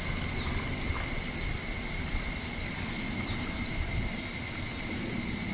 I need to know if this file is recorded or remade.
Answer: recorded